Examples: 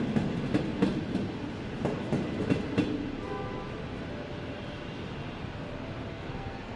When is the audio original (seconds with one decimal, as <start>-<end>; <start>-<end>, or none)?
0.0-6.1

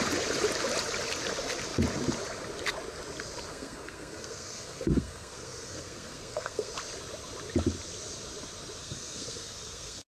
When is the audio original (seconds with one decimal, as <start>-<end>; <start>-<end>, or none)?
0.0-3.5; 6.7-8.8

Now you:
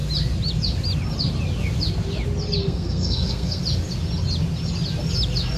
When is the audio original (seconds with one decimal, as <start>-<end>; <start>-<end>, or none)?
0.0-2.6; 3.6-5.6

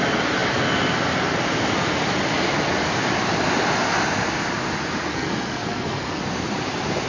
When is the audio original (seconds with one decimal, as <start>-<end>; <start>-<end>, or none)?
0.0-5.1; 6.2-7.1

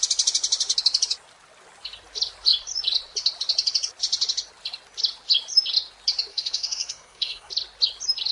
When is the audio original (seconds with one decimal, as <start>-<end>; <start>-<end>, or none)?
0.0-6.3; 7.5-8.3

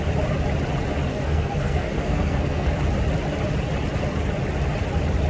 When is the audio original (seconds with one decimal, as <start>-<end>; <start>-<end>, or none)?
0.0-1.1; 2.7-5.3

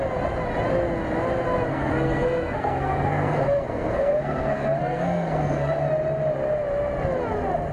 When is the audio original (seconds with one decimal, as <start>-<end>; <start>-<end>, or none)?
0.0-1.7; 5.7-7.7

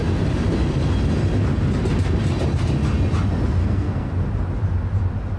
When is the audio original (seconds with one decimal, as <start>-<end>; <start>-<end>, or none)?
0.0-3.6; 4.1-5.4